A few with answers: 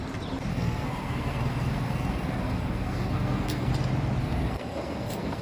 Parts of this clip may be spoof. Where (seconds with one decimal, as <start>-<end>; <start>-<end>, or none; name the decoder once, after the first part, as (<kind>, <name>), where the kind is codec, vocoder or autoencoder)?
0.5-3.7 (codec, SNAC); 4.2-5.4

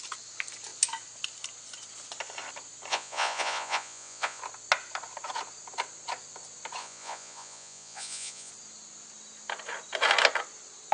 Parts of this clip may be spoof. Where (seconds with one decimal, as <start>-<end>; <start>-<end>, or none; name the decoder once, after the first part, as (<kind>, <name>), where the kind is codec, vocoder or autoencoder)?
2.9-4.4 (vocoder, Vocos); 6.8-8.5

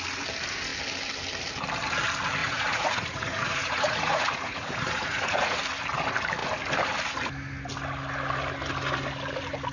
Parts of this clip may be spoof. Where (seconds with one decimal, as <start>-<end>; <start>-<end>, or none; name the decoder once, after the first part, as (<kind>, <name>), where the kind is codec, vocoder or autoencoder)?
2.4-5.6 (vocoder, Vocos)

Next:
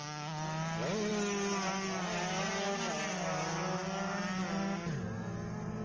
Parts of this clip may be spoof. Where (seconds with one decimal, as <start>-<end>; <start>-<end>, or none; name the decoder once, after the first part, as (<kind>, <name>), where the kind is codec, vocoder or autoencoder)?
none

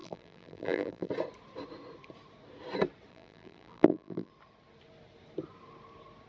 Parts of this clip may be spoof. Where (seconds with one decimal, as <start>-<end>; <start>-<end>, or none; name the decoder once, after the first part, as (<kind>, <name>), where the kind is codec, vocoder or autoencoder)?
0.0-1.1 (vocoder, BigVGAN v2); 3.1-4.3